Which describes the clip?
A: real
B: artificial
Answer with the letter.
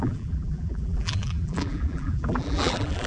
B